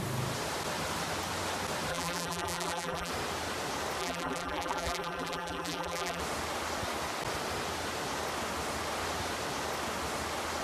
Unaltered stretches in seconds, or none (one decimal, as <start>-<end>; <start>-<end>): 0.0-1.9; 3.1-4.0; 6.2-10.6